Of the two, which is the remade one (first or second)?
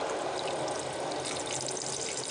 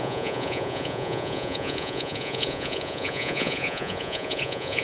second